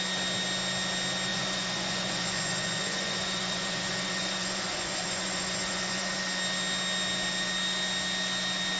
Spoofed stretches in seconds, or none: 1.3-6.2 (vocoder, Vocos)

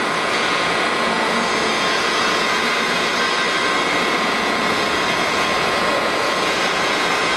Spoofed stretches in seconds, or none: 0.0-3.1 (vocoder, Vocos); 3.9-7.4

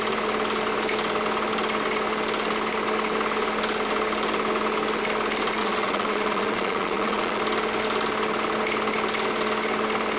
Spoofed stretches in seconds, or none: 5.6-7.4 (vocoder, Vocos)